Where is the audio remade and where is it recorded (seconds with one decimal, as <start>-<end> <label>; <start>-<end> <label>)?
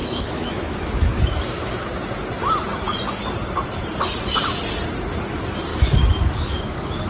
0.0-1.9 remade; 1.9-5.7 recorded; 5.7-7.1 remade